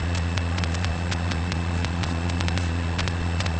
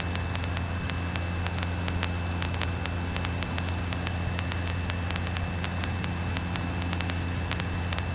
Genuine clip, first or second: second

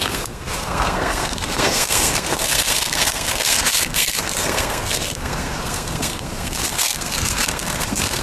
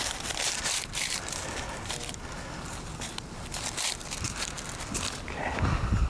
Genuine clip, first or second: second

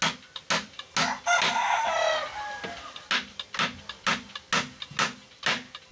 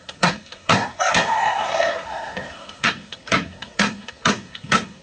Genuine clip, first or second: first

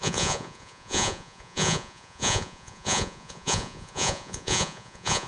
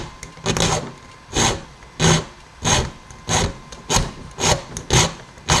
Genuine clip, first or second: second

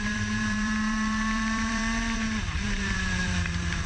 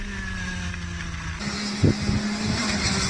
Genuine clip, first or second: second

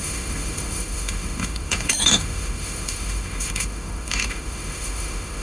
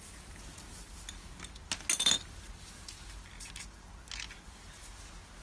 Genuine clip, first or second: second